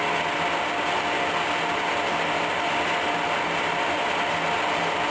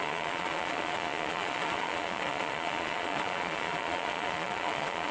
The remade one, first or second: second